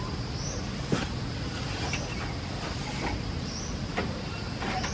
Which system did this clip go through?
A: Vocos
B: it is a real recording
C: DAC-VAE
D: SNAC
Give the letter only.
B